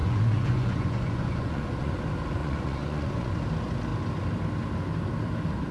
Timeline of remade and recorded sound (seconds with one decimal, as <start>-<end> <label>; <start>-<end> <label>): 0.0-1.9 remade; 1.9-2.4 recorded; 2.4-3.3 remade; 3.3-5.7 recorded